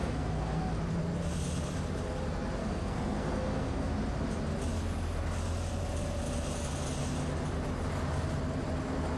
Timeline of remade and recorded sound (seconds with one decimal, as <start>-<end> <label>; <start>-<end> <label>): 0.0-0.6 remade; 0.6-2.6 recorded; 2.6-3.9 remade; 3.9-9.2 recorded